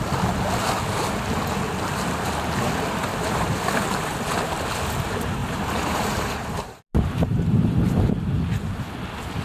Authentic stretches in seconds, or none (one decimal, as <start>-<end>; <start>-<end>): 0.0-5.4; 8.1-9.4